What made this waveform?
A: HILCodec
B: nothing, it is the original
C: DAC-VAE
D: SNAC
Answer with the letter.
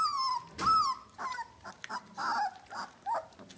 B